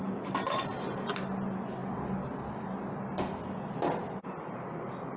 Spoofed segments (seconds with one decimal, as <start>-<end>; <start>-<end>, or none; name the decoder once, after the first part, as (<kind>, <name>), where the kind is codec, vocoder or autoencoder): none